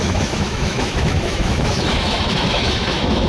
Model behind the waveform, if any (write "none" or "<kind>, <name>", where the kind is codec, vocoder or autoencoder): autoencoder, DAC-VAE